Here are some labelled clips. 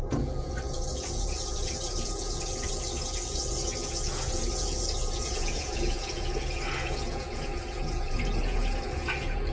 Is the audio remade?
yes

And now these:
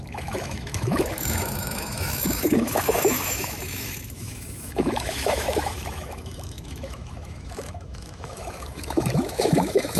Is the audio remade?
yes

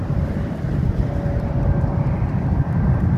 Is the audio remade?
no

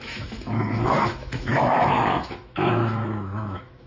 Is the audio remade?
yes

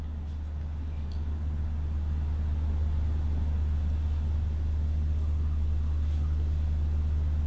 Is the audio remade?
no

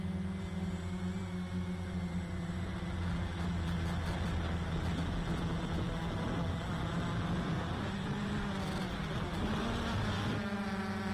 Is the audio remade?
no